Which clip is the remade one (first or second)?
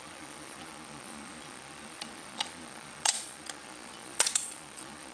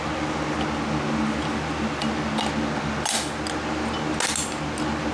first